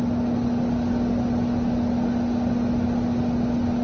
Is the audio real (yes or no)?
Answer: yes